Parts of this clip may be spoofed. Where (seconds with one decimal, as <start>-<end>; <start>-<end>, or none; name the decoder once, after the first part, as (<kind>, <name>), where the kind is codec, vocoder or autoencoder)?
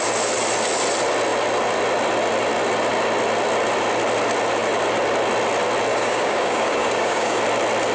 5.9-7.4 (codec, DAC)